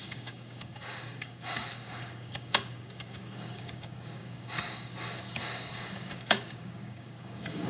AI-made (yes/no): yes